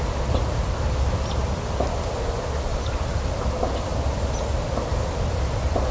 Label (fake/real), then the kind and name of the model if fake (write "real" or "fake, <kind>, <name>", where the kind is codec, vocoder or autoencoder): real